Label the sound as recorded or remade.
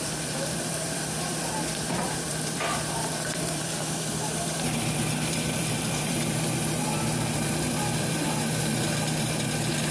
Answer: remade